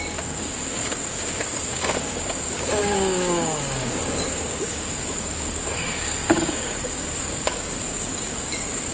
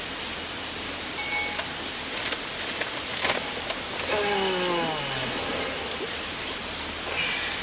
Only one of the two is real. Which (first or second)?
second